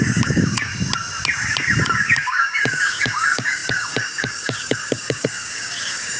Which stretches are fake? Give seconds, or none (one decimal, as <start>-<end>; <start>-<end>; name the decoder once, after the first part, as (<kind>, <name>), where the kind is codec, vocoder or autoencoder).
0.0-0.7 (codec, DAC); 1.8-6.2